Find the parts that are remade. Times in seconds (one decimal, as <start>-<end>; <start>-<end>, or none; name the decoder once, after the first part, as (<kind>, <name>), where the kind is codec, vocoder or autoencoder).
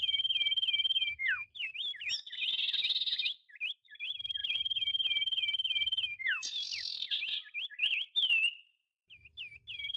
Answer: none